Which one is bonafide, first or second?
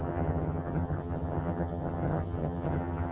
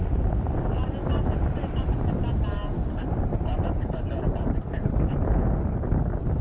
second